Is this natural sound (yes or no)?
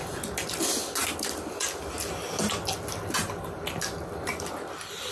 yes